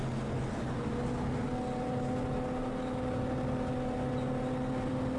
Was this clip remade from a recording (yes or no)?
no